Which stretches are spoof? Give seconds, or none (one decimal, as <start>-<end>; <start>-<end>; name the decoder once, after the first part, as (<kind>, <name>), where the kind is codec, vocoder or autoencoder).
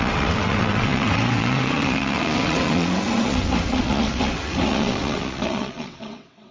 0.0-6.5 (vocoder, WaveNeXt)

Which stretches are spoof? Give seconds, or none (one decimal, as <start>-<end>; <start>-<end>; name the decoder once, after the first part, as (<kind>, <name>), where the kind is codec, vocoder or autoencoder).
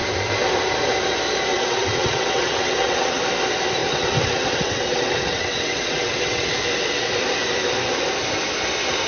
1.5-3.2 (vocoder, WaveNeXt); 3.8-6.5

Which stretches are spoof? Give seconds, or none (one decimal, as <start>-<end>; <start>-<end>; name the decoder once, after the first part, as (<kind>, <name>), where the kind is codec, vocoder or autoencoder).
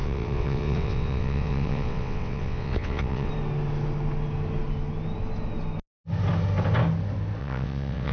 0.0-3.3 (vocoder, WaveNeXt); 7.4-8.1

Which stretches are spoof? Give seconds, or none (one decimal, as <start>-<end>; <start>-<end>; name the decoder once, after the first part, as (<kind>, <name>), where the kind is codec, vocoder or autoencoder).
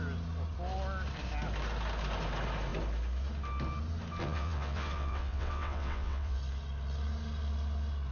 4.2-6.4 (vocoder, WaveNeXt)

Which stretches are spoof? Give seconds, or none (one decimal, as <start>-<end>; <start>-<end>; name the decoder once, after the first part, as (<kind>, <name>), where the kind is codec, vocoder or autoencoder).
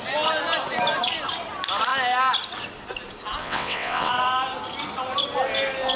3.4-4.1 (vocoder, WaveNeXt)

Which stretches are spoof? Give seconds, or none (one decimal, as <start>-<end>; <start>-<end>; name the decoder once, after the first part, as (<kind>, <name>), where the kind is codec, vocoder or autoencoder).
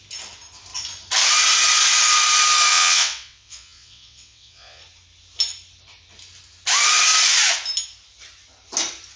2.7-4.8 (vocoder, WaveNeXt)